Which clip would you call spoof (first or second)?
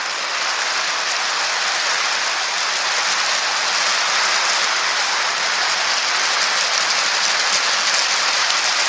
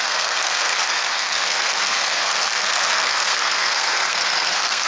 second